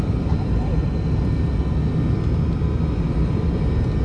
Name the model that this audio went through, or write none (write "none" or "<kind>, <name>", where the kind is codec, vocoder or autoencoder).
none